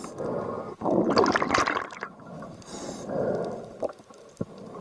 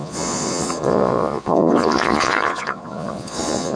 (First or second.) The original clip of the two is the first